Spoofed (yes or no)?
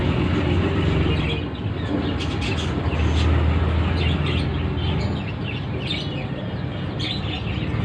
no